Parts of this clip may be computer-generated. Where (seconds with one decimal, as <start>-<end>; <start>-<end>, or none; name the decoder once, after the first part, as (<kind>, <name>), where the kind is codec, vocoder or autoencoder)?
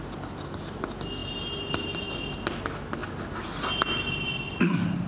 none